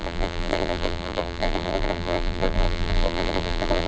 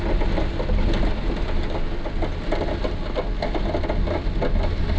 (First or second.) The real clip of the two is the second